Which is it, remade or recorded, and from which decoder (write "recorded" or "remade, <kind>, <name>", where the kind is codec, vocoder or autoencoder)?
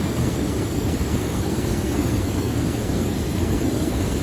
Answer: remade, codec, SNAC